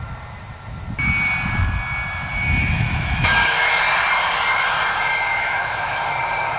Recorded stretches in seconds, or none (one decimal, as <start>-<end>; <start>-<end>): 0.0-2.6; 3.7-5.3; 6.0-6.6